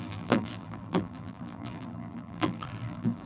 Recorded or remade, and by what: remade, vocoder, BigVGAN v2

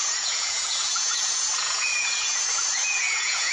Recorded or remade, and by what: remade, vocoder, Vocos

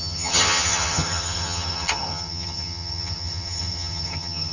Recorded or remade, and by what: remade, vocoder, HiFi-GAN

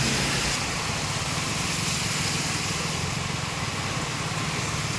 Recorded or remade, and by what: recorded